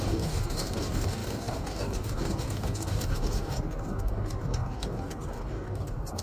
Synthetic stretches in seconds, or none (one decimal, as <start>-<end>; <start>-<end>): 0.0-6.2